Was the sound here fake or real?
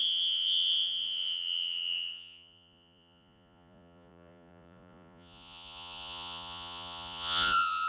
fake